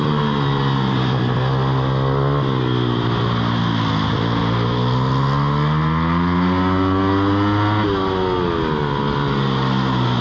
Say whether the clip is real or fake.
real